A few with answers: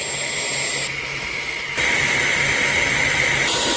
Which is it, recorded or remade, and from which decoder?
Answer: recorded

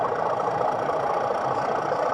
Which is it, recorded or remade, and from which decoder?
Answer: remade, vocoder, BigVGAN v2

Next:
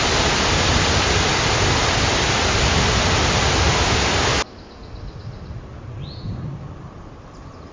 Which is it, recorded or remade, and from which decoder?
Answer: recorded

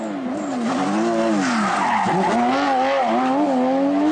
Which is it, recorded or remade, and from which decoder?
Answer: recorded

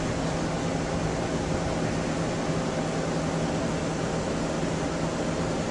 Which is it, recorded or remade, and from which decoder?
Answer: recorded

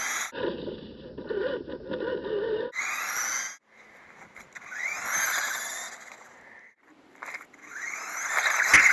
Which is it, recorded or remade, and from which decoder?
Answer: recorded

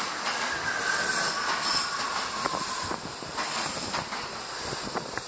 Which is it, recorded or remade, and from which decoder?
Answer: recorded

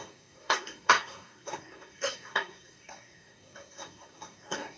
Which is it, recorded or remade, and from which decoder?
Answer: remade, codec, SNAC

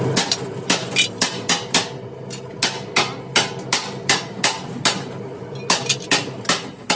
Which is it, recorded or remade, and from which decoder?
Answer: recorded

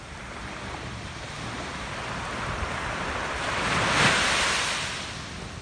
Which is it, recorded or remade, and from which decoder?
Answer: remade, vocoder, BigVGAN v2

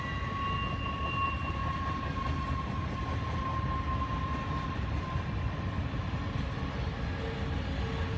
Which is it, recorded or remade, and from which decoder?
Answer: recorded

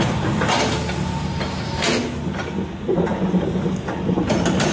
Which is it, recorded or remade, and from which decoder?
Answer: recorded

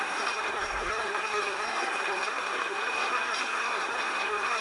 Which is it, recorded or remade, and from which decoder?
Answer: remade, codec, SNAC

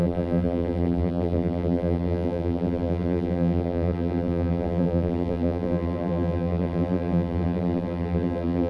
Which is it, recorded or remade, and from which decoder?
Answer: remade, vocoder, BigVGAN v2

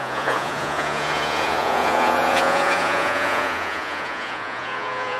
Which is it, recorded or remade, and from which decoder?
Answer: remade, vocoder, Vocos